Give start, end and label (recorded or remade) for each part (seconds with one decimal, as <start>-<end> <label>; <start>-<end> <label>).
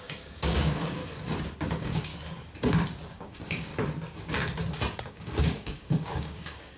0.0-1.0 remade; 1.0-1.6 recorded; 1.6-2.1 remade; 2.1-3.1 recorded; 3.1-3.7 remade; 3.7-5.1 recorded; 5.1-6.8 remade